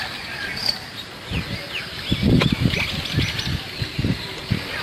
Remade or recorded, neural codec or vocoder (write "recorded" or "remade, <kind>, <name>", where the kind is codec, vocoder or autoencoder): recorded